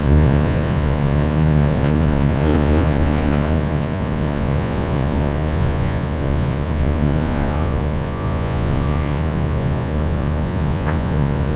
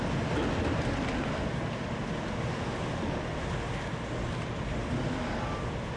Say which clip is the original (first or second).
second